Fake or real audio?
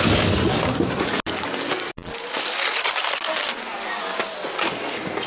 real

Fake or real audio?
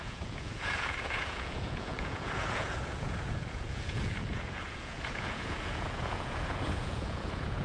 fake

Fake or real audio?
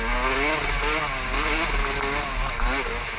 real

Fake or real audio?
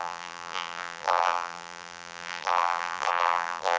fake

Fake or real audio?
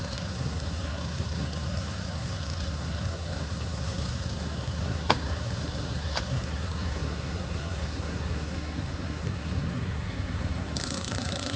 fake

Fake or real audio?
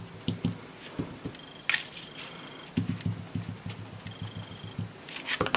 real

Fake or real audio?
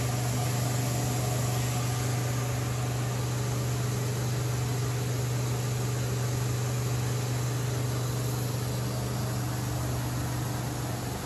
real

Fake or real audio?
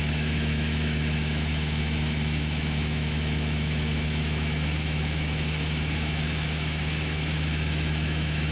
fake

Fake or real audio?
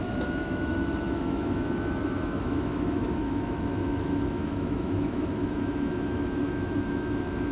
fake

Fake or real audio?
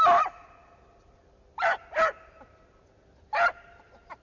real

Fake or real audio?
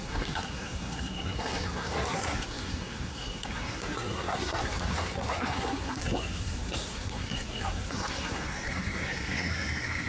fake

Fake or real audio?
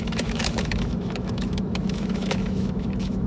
fake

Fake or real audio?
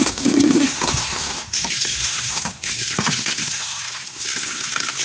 fake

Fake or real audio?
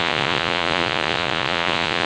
fake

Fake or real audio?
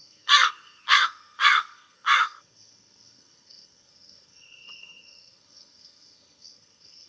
fake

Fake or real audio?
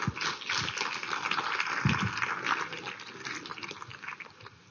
real